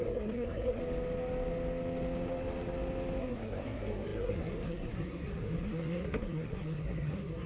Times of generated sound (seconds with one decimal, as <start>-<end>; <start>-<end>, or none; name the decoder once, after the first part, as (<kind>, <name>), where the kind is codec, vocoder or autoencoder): 0.0-0.8 (codec, SNAC); 3.2-7.5